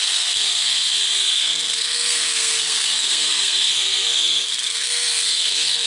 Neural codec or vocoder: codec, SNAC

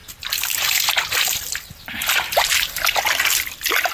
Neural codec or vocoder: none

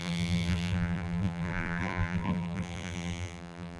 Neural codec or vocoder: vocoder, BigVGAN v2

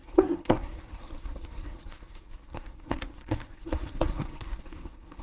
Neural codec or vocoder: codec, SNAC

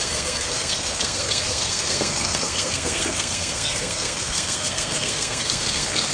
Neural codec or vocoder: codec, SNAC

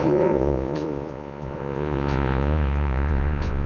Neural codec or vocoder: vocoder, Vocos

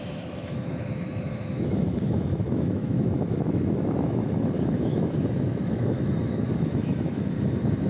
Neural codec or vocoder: autoencoder, DAC-VAE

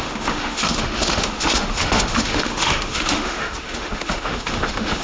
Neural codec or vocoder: autoencoder, DAC-VAE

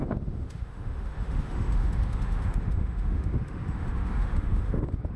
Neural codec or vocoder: autoencoder, DAC-VAE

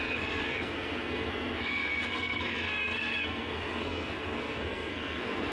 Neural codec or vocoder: codec, SNAC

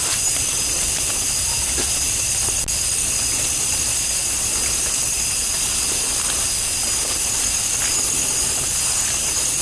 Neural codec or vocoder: none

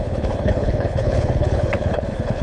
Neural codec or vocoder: codec, HILCodec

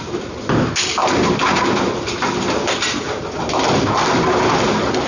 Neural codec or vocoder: none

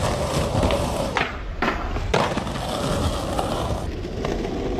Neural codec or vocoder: none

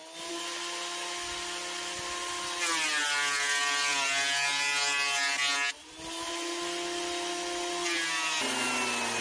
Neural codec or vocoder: none